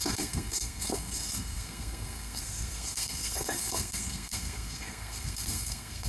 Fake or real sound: fake